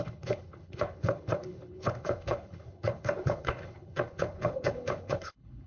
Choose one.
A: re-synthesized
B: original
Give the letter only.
A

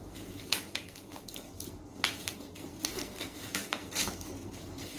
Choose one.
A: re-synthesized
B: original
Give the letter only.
A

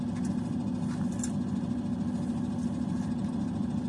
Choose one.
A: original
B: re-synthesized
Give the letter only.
A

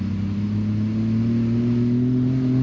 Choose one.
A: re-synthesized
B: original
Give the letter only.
B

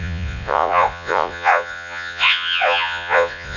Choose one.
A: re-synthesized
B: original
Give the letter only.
A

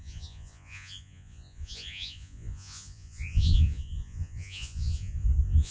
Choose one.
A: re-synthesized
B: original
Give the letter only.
A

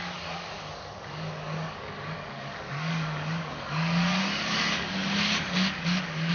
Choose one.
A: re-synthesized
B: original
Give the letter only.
A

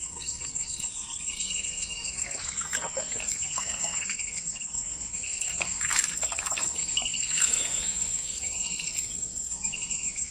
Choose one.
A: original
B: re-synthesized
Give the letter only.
B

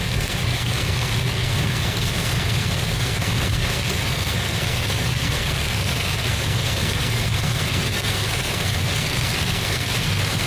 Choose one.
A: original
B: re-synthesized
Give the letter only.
B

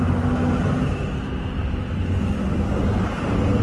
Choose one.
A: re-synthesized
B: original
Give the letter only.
B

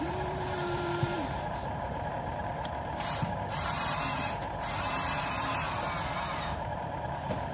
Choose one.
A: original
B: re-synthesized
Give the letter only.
B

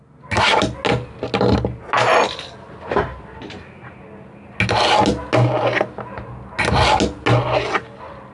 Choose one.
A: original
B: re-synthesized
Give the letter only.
A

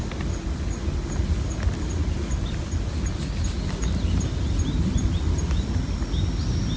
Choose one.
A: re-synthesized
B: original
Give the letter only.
B